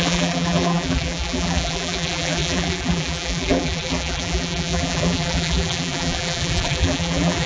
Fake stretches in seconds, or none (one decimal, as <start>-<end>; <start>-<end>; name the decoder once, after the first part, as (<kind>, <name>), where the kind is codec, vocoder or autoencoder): 0.0-7.5 (vocoder, BigVGAN v2)